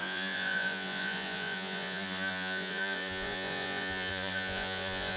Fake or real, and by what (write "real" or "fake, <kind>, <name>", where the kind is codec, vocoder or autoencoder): fake, vocoder, Vocos